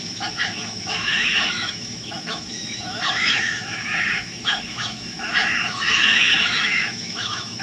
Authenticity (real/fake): fake